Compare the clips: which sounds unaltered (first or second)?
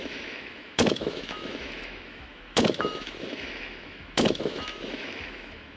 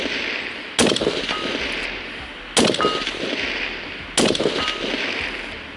second